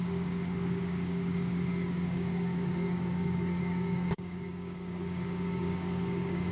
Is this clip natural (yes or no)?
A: no